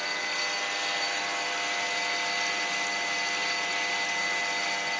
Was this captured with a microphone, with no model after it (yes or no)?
yes